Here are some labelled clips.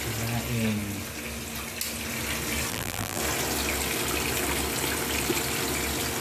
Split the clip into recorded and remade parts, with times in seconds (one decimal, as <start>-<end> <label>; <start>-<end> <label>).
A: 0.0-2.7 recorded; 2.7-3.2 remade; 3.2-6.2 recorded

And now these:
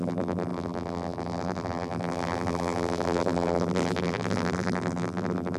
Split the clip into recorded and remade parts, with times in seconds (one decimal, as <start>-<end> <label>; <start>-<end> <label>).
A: 0.0-5.6 remade

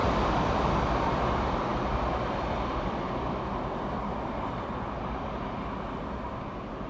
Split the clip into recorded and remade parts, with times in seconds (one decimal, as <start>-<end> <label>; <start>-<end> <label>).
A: 0.0-1.2 remade; 1.2-1.7 recorded; 1.7-5.8 remade; 5.8-6.9 recorded

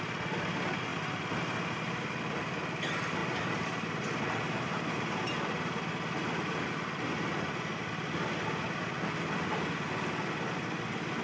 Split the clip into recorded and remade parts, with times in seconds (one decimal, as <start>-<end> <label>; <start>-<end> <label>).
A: 0.0-0.9 recorded; 0.9-2.2 remade; 2.2-3.2 recorded; 3.2-5.9 remade; 5.9-11.2 recorded